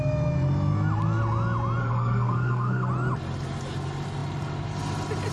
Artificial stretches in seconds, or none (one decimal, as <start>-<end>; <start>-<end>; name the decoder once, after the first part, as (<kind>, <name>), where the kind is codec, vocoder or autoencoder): 1.8-2.9 (codec, SNAC)